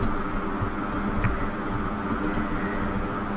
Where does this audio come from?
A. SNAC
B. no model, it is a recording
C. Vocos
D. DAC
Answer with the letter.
B